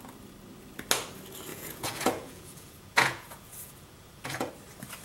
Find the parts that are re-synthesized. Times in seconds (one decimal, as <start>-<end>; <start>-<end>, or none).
1.5-4.5